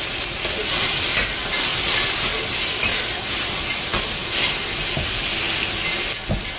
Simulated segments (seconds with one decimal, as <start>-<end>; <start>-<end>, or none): none